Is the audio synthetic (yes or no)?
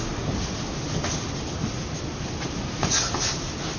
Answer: no